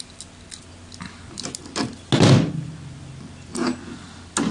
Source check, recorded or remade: recorded